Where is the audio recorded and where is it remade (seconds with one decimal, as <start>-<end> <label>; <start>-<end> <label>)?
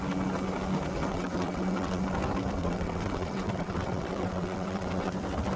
0.0-1.0 recorded; 1.0-2.0 remade; 2.0-2.6 recorded; 2.6-5.1 remade; 5.1-5.6 recorded